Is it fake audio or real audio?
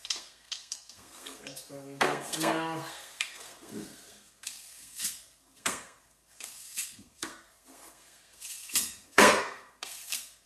fake